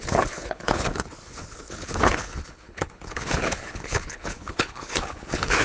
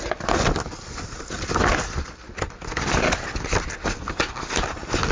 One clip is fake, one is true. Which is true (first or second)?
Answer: second